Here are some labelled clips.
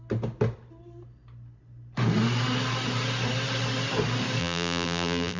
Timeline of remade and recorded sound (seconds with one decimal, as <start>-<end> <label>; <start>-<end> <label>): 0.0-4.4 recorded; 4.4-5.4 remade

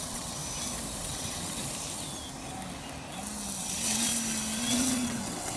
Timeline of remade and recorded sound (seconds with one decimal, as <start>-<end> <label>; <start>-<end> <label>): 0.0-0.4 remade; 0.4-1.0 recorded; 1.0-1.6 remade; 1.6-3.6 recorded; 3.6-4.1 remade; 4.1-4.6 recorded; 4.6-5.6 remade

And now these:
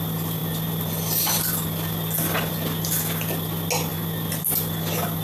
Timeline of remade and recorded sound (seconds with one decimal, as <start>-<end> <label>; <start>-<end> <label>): 0.0-5.2 recorded